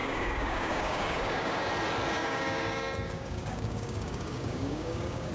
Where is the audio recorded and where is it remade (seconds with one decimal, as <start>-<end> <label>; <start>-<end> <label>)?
0.0-1.7 remade; 1.7-2.2 recorded; 2.2-5.3 remade